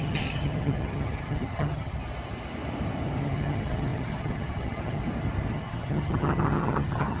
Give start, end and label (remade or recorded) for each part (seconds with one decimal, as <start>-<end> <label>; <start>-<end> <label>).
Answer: 0.0-2.0 remade; 2.0-3.2 recorded; 3.2-5.0 remade; 5.0-5.5 recorded; 5.5-7.2 remade